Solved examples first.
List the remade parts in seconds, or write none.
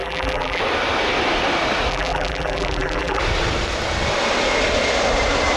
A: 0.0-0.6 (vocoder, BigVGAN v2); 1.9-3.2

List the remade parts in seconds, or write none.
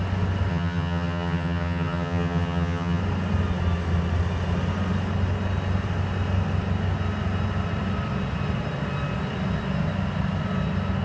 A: 0.5-3.0 (vocoder, HiFi-GAN)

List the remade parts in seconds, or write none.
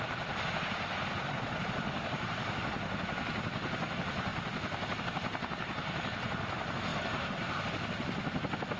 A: none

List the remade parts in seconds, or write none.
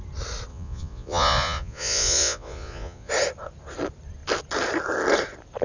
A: 0.5-3.1 (vocoder, Vocos)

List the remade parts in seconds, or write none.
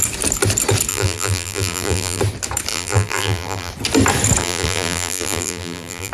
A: 0.9-2.2 (vocoder, BigVGAN v2); 2.7-3.7; 4.4-6.1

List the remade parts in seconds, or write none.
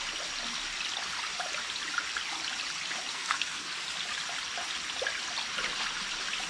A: 3.1-3.7 (codec, SNAC)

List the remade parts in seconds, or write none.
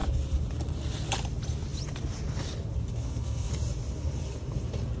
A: 2.9-3.5 (codec, SNAC)